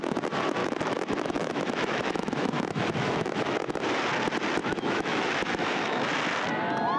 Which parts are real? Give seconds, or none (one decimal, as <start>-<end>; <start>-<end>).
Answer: 0.0-0.6; 3.8-4.6; 6.1-7.0